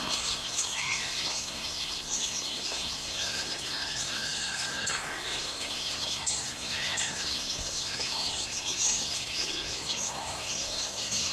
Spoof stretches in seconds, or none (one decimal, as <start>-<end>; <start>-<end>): 0.0-11.3